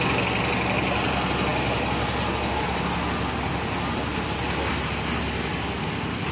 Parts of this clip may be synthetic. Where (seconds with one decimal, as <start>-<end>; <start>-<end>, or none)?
none